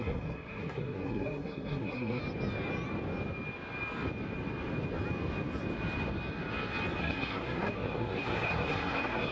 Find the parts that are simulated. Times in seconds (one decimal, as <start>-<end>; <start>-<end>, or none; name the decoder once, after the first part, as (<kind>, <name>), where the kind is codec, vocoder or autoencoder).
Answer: 0.0-2.2 (codec, SNAC); 7.0-9.3